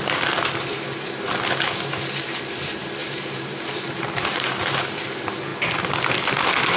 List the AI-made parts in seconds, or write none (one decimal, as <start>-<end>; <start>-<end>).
0.7-1.3; 3.0-5.1